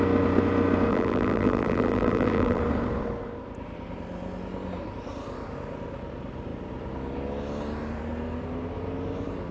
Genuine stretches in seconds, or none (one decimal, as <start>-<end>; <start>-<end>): 0.0-0.9; 2.6-9.5